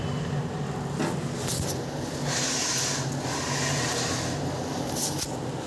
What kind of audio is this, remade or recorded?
recorded